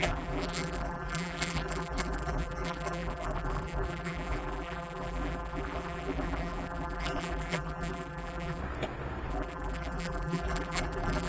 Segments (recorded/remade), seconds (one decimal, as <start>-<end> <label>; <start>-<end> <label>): 0.0-8.6 remade; 8.6-9.3 recorded; 9.3-11.3 remade